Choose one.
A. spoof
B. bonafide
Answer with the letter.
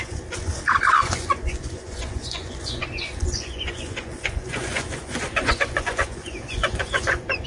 A